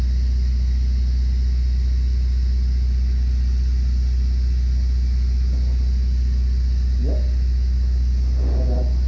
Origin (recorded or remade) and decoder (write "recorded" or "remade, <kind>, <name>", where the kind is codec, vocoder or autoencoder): recorded